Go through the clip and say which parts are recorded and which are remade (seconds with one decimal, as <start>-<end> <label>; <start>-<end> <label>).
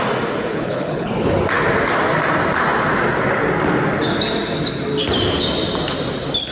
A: 0.0-0.5 recorded; 0.5-1.3 remade; 1.3-6.5 recorded